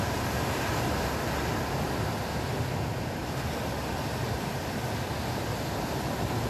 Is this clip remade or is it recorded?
recorded